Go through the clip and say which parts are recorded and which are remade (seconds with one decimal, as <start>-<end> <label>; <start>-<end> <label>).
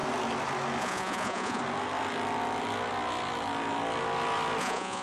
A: 0.0-0.8 recorded; 0.8-1.6 remade; 1.6-4.6 recorded; 4.6-5.0 remade